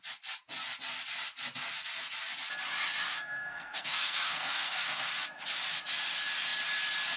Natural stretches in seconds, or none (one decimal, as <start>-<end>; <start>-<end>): 0.0-3.1; 5.1-7.2